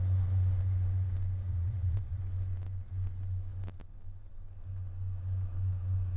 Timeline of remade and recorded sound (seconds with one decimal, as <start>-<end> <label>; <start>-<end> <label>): 0.0-1.5 recorded; 1.5-2.2 remade; 2.2-6.2 recorded

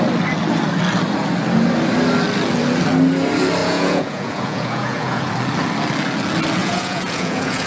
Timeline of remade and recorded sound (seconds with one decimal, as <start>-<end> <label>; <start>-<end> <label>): 0.0-3.6 recorded; 3.6-5.3 remade; 5.3-6.6 recorded; 6.6-7.7 remade

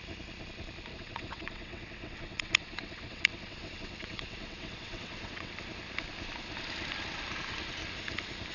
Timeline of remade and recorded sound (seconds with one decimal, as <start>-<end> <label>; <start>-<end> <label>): 0.0-0.9 recorded; 0.9-5.5 remade; 5.5-8.5 recorded

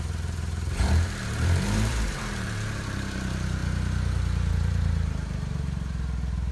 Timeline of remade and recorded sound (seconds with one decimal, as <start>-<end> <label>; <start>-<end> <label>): 0.0-3.6 remade; 3.6-4.5 recorded; 4.5-6.5 remade

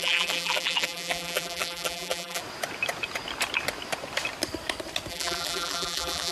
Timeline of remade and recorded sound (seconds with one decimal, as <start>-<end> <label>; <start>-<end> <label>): 0.0-2.4 remade; 2.4-5.1 recorded; 5.1-6.3 remade

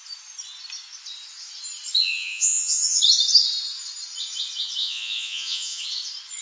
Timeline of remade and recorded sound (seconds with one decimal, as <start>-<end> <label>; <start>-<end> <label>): 0.0-2.0 recorded; 2.0-3.0 remade; 3.0-4.8 recorded; 4.8-5.8 remade; 5.8-6.4 recorded

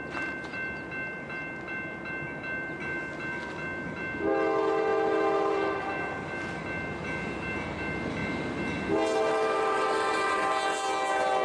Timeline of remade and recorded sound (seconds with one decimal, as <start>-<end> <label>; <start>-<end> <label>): 0.0-11.4 recorded

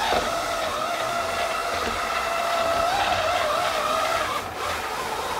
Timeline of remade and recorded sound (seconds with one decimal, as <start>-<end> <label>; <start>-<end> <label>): 0.0-5.4 recorded